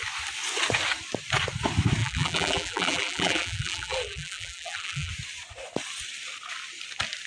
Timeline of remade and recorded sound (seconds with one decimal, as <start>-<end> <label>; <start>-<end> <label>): 0.0-2.0 recorded; 2.0-5.1 remade; 5.1-7.3 recorded